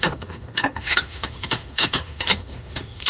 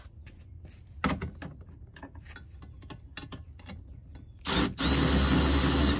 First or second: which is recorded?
second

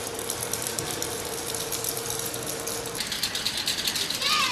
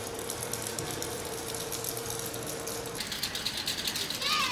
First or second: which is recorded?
second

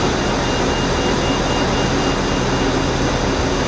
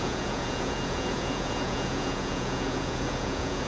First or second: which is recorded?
first